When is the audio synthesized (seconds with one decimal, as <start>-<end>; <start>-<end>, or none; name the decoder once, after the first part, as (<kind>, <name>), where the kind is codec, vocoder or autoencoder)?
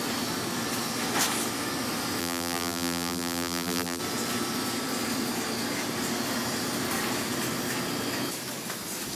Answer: 2.2-4.0 (vocoder, BigVGAN v2)